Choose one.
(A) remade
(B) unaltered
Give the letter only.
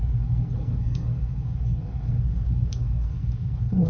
A